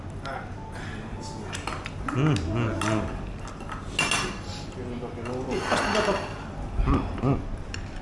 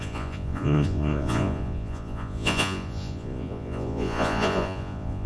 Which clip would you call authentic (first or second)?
first